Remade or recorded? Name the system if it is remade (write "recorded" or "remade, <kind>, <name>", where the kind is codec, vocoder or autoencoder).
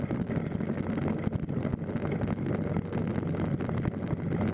recorded